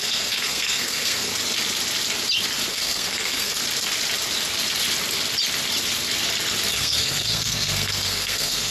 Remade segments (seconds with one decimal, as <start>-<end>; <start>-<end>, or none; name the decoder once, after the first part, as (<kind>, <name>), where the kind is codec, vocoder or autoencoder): 0.0-1.3 (codec, SNAC); 2.7-3.6; 6.7-8.7